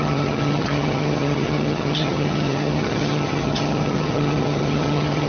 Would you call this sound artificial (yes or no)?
yes